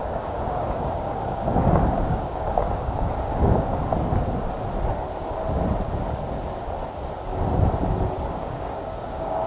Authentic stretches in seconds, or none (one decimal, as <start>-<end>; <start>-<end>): 3.9-8.3